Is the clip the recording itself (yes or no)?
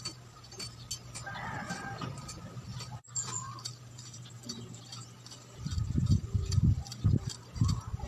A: yes